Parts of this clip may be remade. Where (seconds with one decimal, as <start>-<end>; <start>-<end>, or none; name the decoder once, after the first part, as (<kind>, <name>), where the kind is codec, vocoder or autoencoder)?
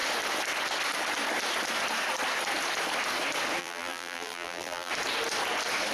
3.6-4.9 (vocoder, BigVGAN v2)